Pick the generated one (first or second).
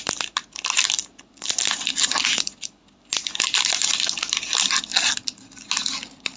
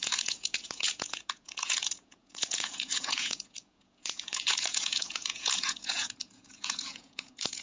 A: second